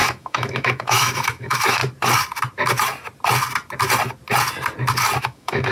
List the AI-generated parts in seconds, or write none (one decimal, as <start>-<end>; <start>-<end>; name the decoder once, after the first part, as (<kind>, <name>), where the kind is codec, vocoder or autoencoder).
0.0-1.8 (autoencoder, DAC-VAE); 5.2-5.7